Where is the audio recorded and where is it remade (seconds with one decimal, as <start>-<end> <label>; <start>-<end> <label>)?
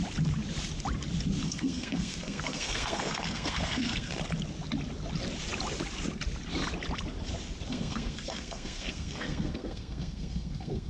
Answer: 0.0-1.4 recorded; 1.4-4.1 remade; 4.1-7.7 recorded; 7.7-10.9 remade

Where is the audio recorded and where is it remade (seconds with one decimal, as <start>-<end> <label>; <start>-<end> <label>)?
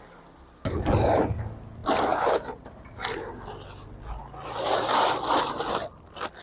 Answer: 0.0-6.4 recorded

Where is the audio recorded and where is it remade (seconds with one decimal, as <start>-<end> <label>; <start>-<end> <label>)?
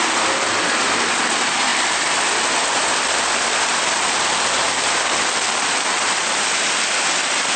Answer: 0.0-7.6 recorded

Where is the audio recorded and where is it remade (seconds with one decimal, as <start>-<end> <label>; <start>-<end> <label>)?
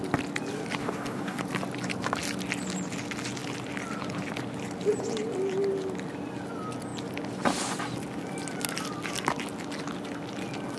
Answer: 0.0-0.8 recorded; 0.8-1.4 remade; 1.4-10.8 recorded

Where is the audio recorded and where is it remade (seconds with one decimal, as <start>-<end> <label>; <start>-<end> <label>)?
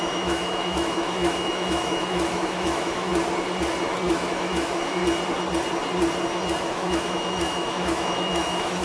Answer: 0.0-3.1 remade; 3.1-4.1 recorded; 4.1-5.0 remade; 5.0-6.6 recorded; 6.6-8.8 remade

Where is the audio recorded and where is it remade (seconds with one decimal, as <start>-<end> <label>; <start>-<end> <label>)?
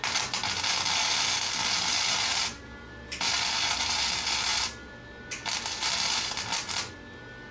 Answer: 0.0-7.5 recorded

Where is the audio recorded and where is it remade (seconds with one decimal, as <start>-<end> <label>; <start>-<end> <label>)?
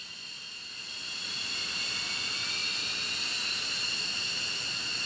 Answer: 0.0-0.7 remade; 0.7-5.1 recorded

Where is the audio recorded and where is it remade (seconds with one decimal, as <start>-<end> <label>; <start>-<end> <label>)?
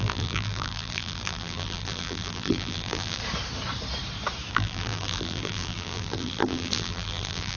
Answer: 0.0-3.2 remade; 3.2-4.5 recorded; 4.5-7.6 remade